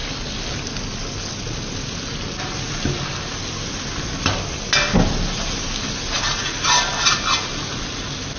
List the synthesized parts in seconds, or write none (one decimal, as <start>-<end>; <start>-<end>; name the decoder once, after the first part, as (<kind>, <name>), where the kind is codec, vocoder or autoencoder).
none